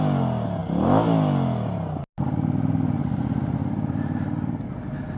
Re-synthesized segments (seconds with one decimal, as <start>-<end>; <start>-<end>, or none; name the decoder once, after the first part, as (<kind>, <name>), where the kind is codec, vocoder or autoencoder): none